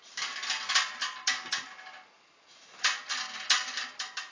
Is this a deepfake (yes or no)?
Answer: no